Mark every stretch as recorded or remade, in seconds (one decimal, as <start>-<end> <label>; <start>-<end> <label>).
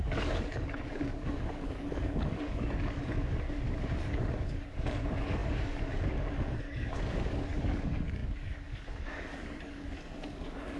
0.0-10.8 remade